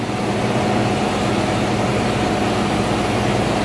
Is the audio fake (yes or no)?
no